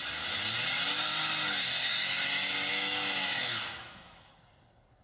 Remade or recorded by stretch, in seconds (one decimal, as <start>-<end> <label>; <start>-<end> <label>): 0.0-2.7 recorded; 2.7-4.3 remade; 4.3-5.0 recorded

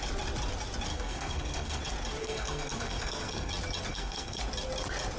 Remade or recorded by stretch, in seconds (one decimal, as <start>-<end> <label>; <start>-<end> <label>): 0.0-0.9 recorded; 0.9-1.8 remade; 1.8-2.2 recorded; 2.2-3.5 remade; 3.5-3.9 recorded; 3.9-4.4 remade; 4.4-5.2 recorded